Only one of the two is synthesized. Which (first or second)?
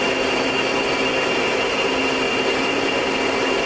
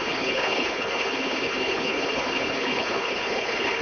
second